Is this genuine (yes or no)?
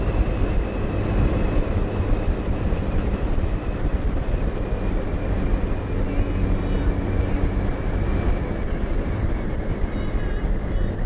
yes